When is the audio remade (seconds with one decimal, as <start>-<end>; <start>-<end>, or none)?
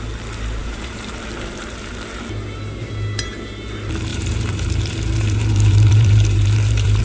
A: 0.6-1.2; 4.1-7.0